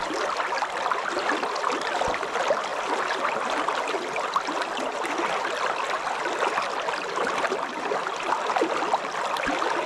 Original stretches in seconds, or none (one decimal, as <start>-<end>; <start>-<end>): 0.0-9.9